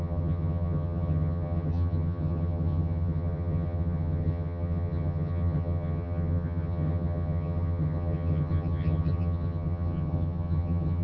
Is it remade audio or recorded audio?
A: remade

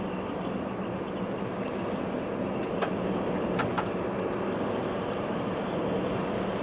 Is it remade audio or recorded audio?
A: recorded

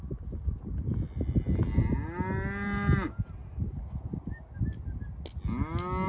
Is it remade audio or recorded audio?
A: recorded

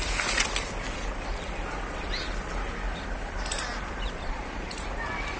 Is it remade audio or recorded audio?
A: recorded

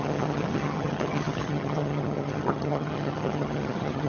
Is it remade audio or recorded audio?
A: remade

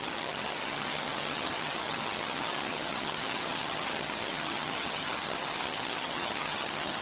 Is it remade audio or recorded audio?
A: remade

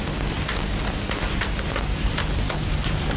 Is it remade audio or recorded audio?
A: recorded